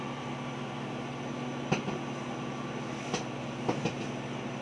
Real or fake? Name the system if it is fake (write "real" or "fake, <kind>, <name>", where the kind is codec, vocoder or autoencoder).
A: real